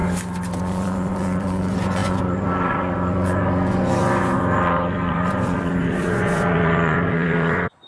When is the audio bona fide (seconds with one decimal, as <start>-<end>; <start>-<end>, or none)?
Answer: 0.0-0.6